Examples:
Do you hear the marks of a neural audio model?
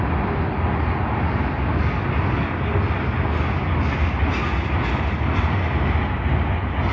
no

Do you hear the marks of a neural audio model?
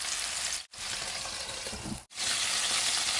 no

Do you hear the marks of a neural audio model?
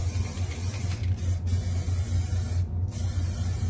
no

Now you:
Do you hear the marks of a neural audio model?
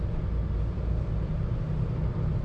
no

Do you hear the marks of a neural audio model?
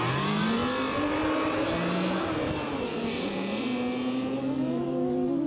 no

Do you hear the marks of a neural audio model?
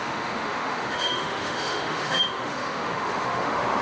yes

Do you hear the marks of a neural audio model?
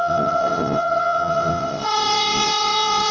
yes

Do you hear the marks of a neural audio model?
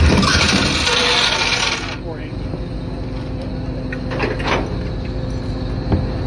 no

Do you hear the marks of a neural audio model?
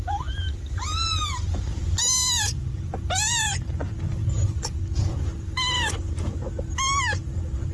no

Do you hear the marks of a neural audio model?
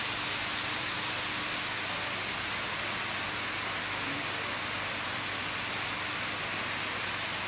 no